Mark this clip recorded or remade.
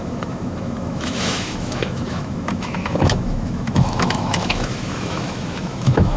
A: remade